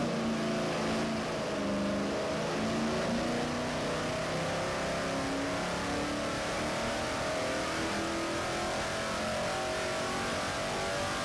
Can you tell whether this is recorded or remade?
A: recorded